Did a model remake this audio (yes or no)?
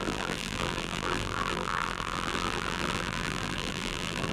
yes